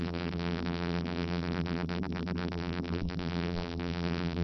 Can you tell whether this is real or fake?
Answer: fake